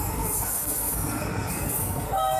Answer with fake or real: fake